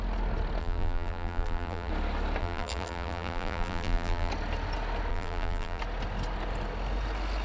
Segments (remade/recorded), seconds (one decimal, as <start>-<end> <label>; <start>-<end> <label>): 0.0-0.6 recorded; 0.6-1.9 remade; 1.9-2.4 recorded; 2.4-4.3 remade; 4.3-5.1 recorded; 5.1-5.8 remade; 5.8-7.4 recorded